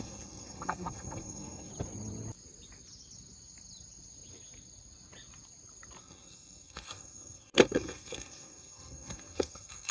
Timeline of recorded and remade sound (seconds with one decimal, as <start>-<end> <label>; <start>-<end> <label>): 0.0-1.7 remade; 1.7-6.0 recorded; 6.0-9.9 remade